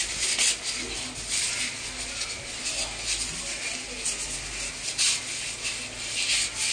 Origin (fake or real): real